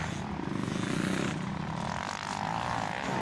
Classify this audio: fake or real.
real